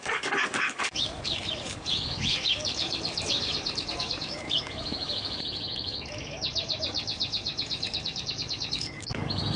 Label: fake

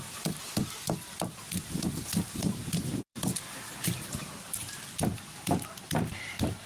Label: fake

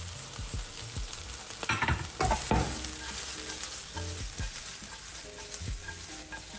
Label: real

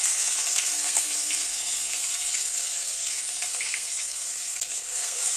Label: fake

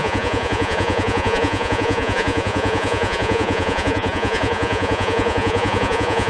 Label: fake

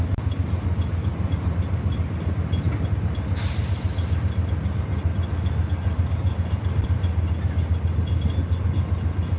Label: real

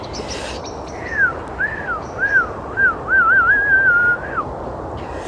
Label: real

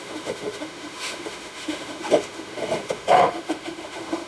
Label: fake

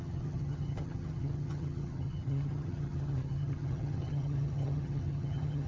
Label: fake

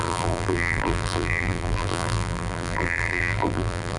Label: fake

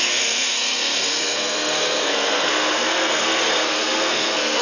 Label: fake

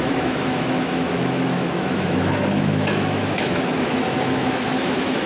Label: fake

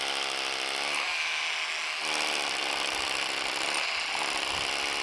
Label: real